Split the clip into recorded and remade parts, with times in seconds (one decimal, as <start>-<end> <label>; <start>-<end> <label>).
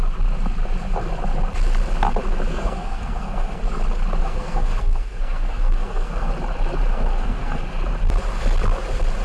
0.0-2.5 recorded; 2.5-3.6 remade; 3.6-4.2 recorded; 4.2-6.3 remade; 6.3-6.9 recorded; 6.9-7.6 remade; 7.6-9.2 recorded